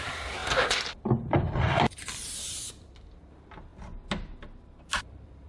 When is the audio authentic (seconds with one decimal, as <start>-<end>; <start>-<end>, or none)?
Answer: 3.7-5.0